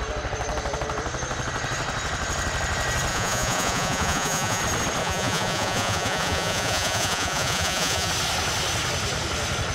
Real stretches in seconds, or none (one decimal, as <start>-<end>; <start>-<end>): 0.0-3.1; 4.6-5.0; 8.1-9.7